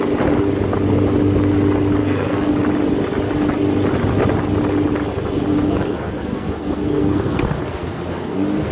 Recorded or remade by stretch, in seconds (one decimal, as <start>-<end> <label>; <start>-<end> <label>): 0.0-2.0 recorded; 2.0-2.5 remade; 2.5-5.5 recorded; 5.5-8.7 remade